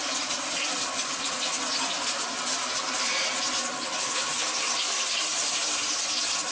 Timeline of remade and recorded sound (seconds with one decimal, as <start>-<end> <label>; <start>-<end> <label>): 0.0-1.9 remade; 1.9-6.5 recorded